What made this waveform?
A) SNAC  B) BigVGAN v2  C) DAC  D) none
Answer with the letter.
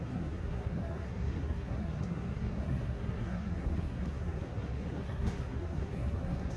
A